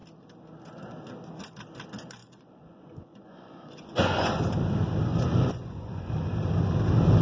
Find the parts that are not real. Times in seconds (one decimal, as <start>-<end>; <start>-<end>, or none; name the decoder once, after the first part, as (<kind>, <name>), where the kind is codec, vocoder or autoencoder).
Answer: 2.2-4.4 (vocoder, Vocos); 5.1-6.1